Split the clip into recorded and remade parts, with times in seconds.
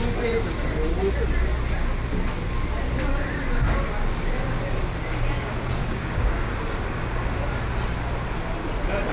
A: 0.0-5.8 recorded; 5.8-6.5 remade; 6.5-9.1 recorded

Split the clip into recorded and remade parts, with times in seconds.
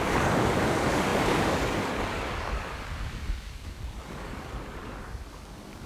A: 0.0-5.9 remade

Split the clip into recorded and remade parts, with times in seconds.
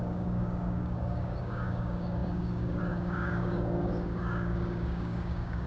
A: 0.0-5.7 remade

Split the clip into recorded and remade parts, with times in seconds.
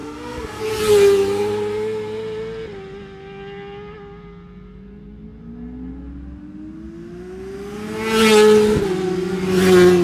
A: 0.0-0.6 remade; 0.6-10.0 recorded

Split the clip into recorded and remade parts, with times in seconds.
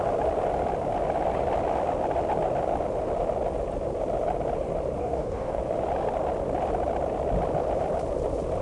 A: 0.0-5.0 recorded; 5.0-5.6 remade; 5.6-8.6 recorded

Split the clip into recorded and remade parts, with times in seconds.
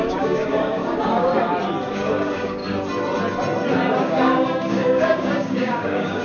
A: 0.0-1.3 remade; 1.3-1.9 recorded; 1.9-2.6 remade; 2.6-4.0 recorded; 4.0-6.2 remade